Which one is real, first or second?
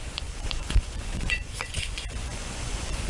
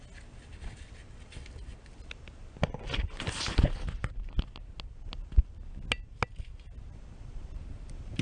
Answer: second